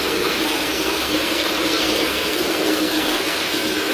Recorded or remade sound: remade